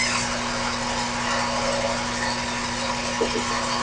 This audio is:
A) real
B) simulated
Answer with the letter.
A